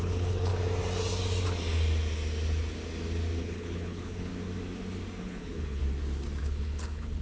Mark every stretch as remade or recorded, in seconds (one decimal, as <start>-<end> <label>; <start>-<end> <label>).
0.0-0.5 remade; 0.5-3.4 recorded; 3.4-4.3 remade; 4.3-5.2 recorded; 5.2-5.8 remade; 5.8-6.4 recorded; 6.4-7.2 remade